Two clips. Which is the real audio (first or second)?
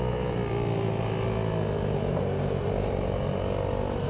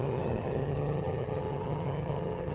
first